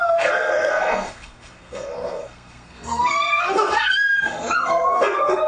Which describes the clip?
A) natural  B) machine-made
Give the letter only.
B